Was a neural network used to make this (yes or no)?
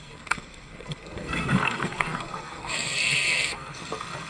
yes